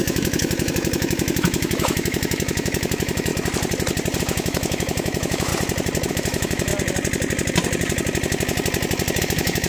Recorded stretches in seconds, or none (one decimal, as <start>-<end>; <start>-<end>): 3.3-4.2; 5.5-6.1; 6.7-9.2